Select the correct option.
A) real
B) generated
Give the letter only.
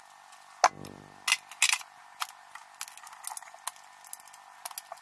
A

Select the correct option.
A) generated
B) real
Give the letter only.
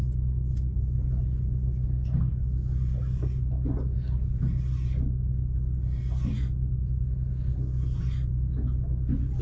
B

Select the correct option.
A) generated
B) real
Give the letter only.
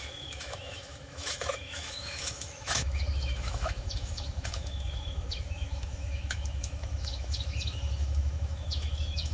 A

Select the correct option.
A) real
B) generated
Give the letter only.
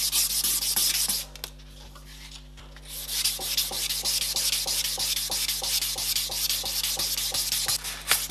A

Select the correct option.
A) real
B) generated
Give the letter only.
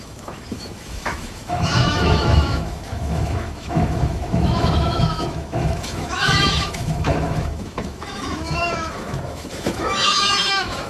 B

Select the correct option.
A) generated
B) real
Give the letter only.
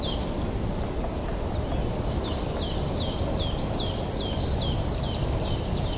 B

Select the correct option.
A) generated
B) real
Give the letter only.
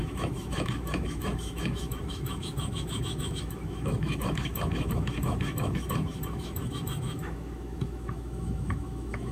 A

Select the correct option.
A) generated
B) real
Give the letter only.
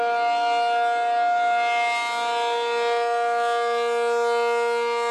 B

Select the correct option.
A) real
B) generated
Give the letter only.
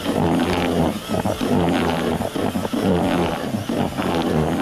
A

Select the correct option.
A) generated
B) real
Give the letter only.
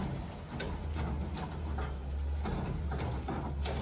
B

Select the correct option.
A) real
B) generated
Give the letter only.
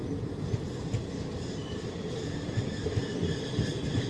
A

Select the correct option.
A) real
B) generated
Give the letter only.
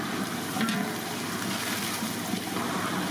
A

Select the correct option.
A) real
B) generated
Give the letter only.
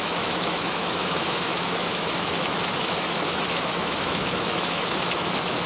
B